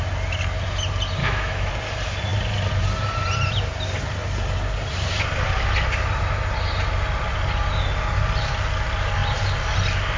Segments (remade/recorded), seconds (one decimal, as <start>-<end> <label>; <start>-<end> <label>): 0.0-1.2 recorded; 1.2-1.7 remade; 1.7-10.2 recorded